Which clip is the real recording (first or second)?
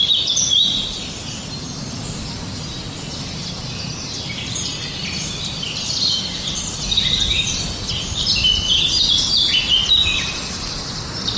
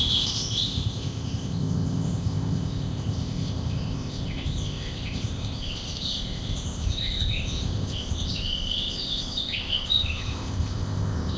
first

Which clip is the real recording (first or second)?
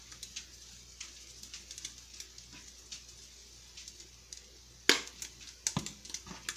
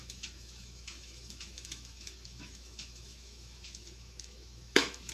first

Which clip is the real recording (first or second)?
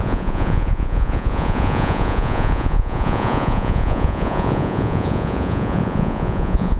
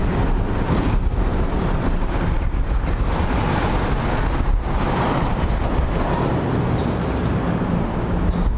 second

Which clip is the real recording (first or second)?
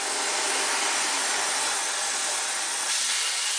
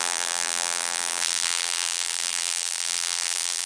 first